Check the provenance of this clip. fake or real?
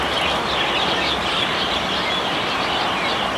real